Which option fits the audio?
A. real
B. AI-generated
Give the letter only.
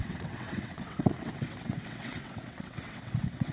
B